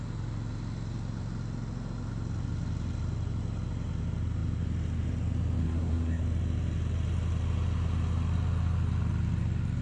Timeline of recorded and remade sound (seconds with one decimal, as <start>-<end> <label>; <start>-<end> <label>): 0.0-5.6 recorded; 5.6-6.2 remade; 6.2-9.8 recorded